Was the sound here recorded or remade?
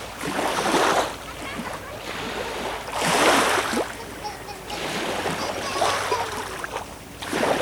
recorded